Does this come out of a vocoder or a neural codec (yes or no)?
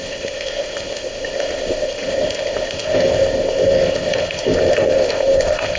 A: yes